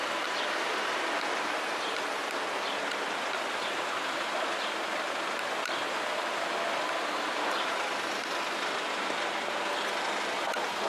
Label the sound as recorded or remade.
recorded